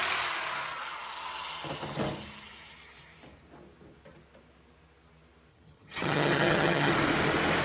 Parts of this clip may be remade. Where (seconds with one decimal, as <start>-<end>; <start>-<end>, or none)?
5.5-6.9